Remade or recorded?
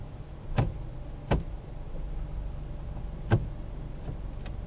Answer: recorded